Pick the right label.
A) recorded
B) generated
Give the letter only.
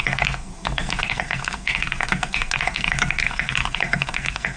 B